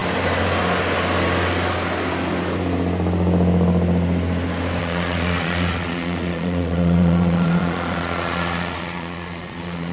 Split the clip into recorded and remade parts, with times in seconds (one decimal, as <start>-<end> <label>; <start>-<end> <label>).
0.0-4.8 recorded; 4.8-9.9 remade